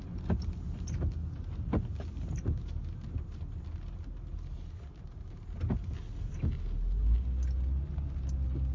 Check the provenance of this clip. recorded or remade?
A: recorded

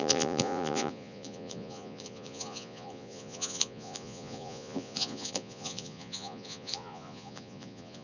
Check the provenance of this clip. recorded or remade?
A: remade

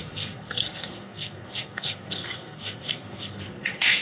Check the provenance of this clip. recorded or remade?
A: remade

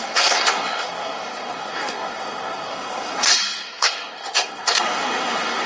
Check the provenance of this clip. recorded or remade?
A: remade